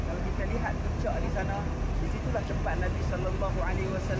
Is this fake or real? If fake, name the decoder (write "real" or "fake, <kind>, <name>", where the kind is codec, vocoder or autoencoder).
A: real